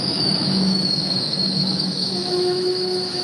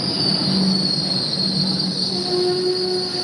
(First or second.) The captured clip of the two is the second